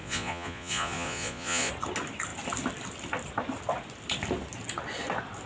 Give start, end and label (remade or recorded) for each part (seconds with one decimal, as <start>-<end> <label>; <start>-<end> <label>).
0.0-1.7 remade; 1.7-5.5 recorded